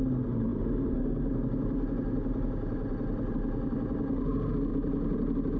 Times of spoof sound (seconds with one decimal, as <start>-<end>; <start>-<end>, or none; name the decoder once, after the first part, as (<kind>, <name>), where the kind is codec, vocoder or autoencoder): none